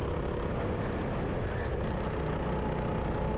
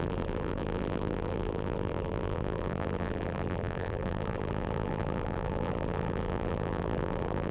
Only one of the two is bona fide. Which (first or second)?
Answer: first